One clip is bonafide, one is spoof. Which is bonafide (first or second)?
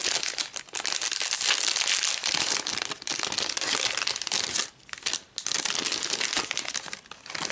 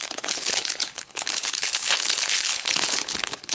first